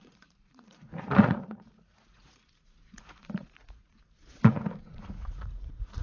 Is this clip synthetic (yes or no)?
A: yes